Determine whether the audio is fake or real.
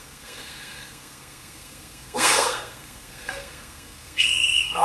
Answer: fake